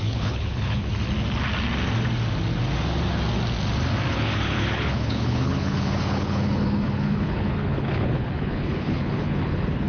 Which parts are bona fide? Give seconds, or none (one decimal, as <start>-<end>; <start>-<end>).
0.9-4.1